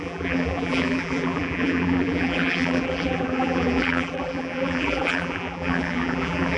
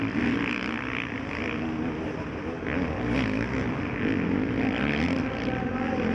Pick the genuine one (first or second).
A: second